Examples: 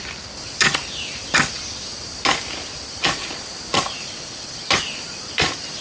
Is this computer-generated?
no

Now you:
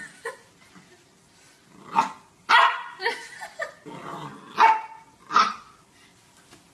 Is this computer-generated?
no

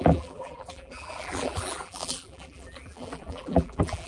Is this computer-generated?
yes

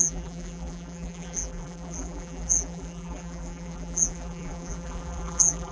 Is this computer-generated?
yes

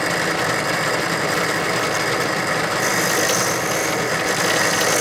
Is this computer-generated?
no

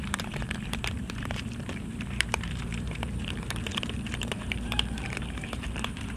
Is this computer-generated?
yes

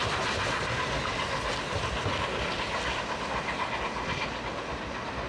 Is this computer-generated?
no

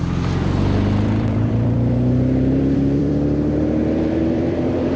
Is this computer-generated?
yes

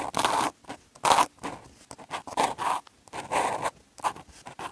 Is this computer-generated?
no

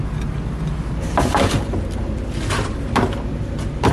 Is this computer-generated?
yes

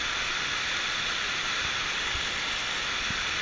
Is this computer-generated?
no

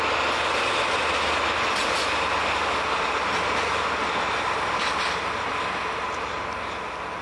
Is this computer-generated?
no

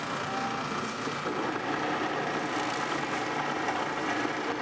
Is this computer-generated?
no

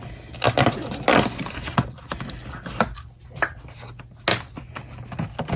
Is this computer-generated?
no